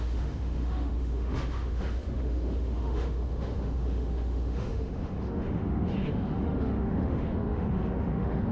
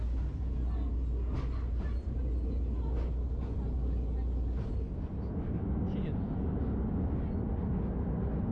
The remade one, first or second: first